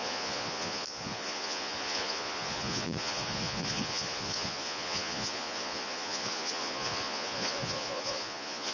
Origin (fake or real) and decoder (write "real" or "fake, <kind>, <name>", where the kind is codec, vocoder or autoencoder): fake, vocoder, Vocos